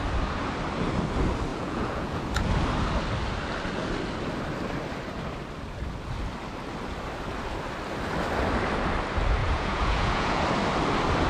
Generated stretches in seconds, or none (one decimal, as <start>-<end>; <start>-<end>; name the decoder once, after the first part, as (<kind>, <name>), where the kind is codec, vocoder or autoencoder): 1.5-2.2 (vocoder, Vocos); 9.4-10.4